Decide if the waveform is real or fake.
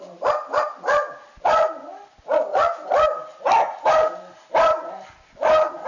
real